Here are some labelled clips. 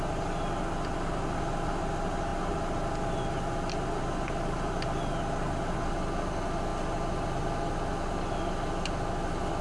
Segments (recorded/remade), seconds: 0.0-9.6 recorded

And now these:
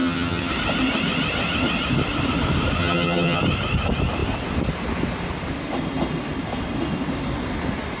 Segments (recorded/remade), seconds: 0.0-0.5 remade; 0.5-2.8 recorded; 2.8-3.4 remade; 3.4-8.0 recorded